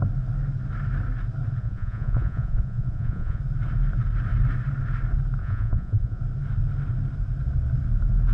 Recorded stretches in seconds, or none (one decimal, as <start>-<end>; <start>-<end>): 0.0-1.6; 3.4-5.4; 6.2-8.3